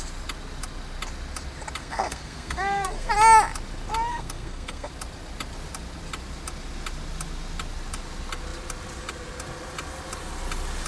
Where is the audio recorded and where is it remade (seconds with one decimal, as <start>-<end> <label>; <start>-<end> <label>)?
0.0-1.8 recorded; 1.8-3.1 remade; 3.1-4.1 recorded; 4.1-4.9 remade; 4.9-10.9 recorded